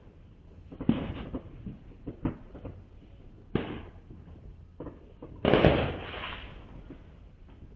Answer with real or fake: real